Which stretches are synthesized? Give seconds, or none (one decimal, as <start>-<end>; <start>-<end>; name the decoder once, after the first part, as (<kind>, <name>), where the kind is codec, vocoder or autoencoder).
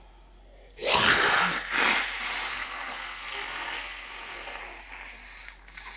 2.5-4.6 (codec, SNAC)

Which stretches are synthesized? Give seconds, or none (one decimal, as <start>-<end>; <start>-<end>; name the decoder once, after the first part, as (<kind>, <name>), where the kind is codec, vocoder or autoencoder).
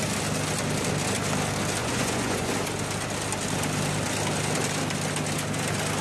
1.8-2.5 (vocoder, Vocos)